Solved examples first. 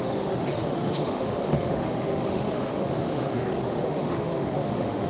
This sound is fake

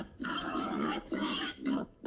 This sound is fake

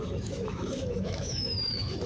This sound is fake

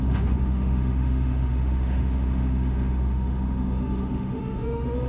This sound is fake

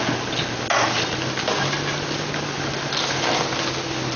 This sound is real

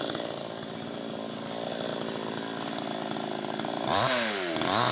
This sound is real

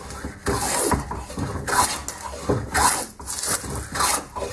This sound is real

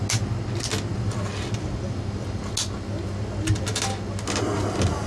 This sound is real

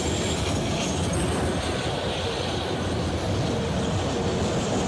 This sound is real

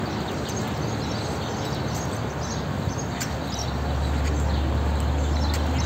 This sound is real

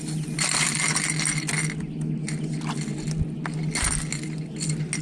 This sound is real